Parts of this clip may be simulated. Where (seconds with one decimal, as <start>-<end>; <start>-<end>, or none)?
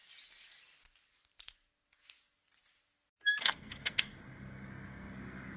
3.4-5.6